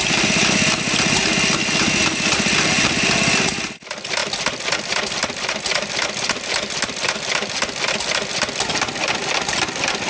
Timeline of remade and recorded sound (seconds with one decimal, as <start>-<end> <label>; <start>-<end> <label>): 0.0-10.1 recorded